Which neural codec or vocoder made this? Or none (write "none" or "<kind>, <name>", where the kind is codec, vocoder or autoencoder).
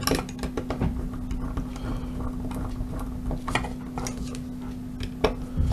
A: none